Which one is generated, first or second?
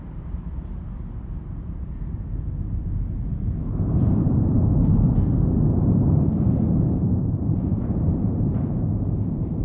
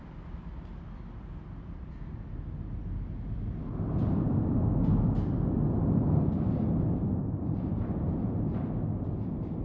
first